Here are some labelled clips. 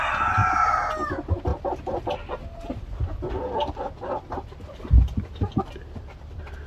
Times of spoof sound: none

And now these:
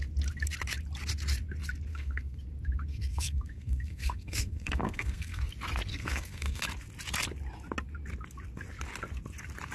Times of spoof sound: 1.9-2.4 (codec, SNAC); 2.9-5.5; 5.9-6.6

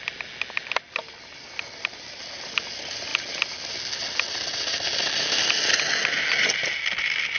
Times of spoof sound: none

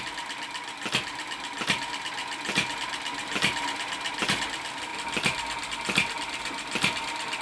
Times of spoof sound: none

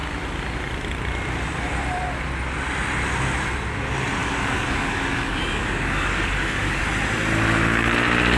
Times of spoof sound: 4.2-6.8 (codec, DAC)

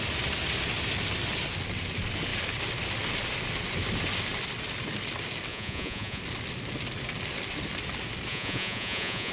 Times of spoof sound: 5.5-6.2 (vocoder, Vocos); 8.3-9.3